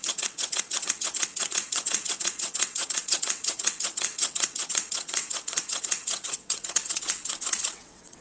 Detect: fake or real fake